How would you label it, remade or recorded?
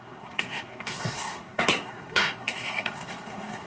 remade